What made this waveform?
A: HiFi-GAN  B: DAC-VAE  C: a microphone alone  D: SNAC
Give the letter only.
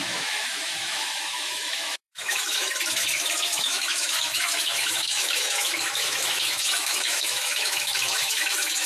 B